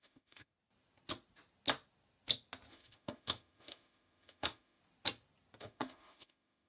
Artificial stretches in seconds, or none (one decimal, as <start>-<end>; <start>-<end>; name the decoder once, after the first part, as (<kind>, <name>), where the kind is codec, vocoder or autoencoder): 0.0-0.5 (autoencoder, DAC-VAE); 2.7-4.8; 5.6-6.7